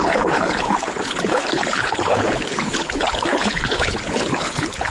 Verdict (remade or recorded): remade